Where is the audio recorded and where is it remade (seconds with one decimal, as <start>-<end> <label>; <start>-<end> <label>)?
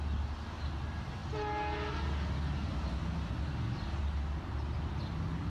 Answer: 0.0-5.5 recorded